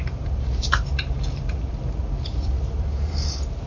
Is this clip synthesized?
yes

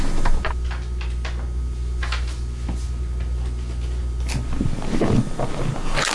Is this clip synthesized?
no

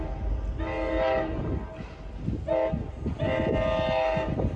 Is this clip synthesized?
no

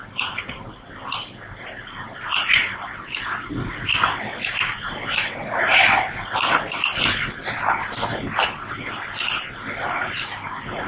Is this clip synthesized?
no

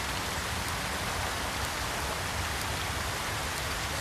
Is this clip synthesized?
no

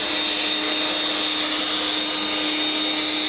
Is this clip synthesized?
no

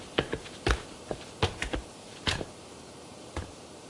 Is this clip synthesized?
yes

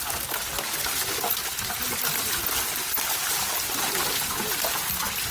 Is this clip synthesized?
no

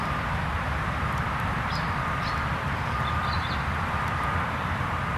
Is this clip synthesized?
yes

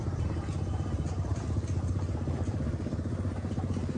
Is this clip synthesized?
yes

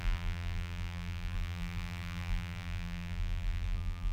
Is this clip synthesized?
yes